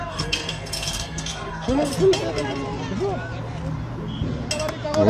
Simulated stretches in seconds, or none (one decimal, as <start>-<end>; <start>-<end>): 0.0-1.9